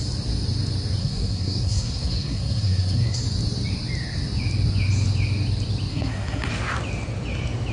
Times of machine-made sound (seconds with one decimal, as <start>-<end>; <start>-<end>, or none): 1.0-3.2; 5.9-6.5